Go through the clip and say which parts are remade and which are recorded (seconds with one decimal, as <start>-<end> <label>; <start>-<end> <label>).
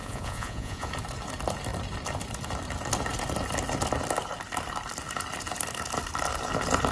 0.0-0.9 remade; 0.9-6.9 recorded